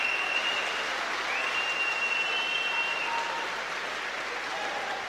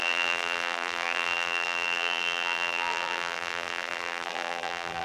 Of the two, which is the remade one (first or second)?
second